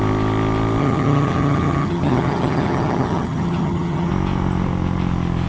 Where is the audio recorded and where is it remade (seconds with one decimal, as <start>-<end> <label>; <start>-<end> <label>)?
0.0-0.8 recorded; 0.8-4.1 remade; 4.1-5.5 recorded